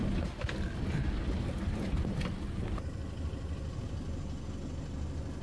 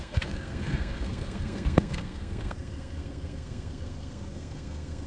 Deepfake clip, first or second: second